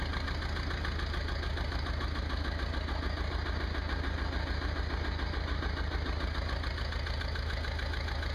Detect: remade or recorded recorded